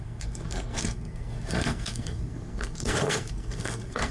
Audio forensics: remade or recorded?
remade